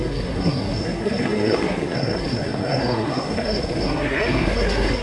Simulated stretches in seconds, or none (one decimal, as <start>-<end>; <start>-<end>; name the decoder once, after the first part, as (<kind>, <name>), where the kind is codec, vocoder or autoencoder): 0.0-5.0 (codec, SNAC)